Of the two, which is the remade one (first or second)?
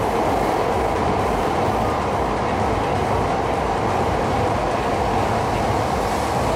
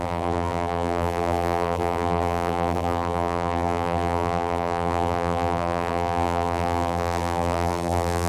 second